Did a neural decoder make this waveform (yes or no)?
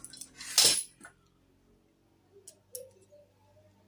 no